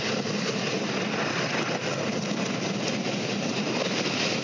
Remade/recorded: recorded